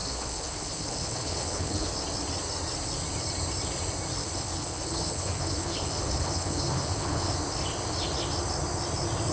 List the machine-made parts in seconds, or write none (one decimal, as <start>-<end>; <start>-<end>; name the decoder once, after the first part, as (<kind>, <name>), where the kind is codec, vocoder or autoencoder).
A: 0.0-1.9 (codec, HILCodec); 4.2-7.3